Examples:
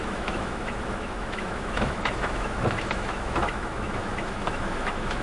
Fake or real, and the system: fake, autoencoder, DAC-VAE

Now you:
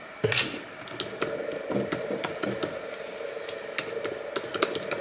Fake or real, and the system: real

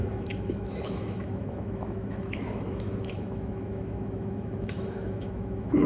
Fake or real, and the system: fake, autoencoder, DAC-VAE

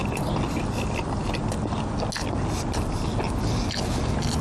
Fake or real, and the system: real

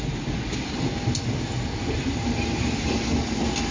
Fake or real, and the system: real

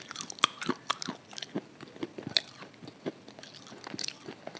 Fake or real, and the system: real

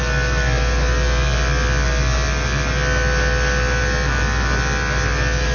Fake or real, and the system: real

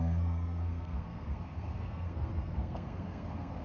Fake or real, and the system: fake, codec, SNAC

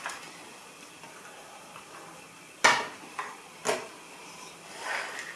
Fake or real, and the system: real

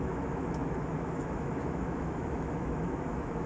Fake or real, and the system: fake, autoencoder, DAC-VAE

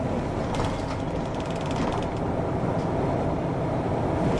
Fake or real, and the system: real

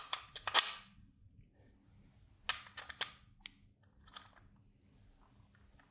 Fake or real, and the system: real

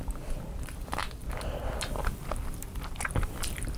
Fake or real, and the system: real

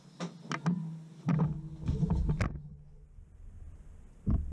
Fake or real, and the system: real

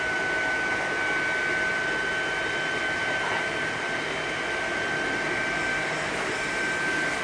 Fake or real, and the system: real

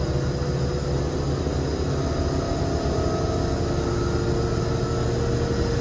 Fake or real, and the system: real